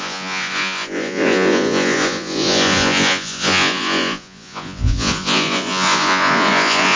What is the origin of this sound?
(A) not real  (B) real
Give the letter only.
A